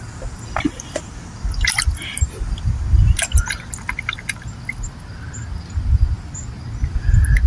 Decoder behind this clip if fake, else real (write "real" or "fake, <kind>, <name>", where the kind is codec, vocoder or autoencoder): real